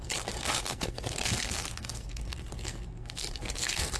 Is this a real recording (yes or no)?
no